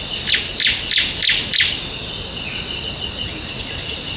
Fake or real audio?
real